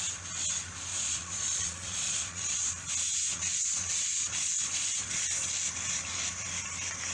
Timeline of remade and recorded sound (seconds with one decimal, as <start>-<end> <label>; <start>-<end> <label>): 0.0-0.9 recorded; 0.9-2.7 remade; 2.7-3.1 recorded; 3.1-5.5 remade; 5.5-7.1 recorded